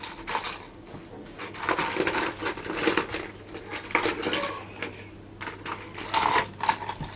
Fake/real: real